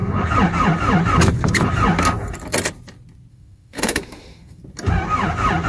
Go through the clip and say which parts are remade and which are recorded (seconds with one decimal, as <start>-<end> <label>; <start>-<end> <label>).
0.0-3.3 recorded; 3.3-4.6 remade; 4.6-5.7 recorded

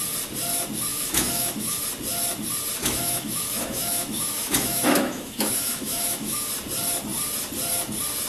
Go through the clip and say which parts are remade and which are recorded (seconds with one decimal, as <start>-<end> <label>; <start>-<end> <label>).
0.0-0.9 recorded; 0.9-1.8 remade; 1.8-2.8 recorded; 2.8-6.5 remade; 6.5-8.3 recorded

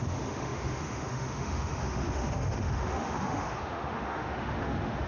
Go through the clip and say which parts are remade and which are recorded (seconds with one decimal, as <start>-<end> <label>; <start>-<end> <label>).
0.0-5.1 remade

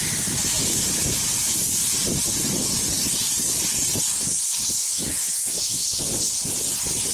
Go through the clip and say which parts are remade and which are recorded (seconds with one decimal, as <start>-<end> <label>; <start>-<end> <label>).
0.0-4.8 recorded; 4.8-6.0 remade; 6.0-7.1 recorded

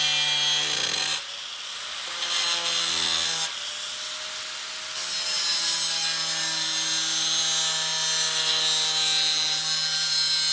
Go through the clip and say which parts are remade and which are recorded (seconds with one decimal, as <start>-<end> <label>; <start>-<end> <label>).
0.0-10.5 recorded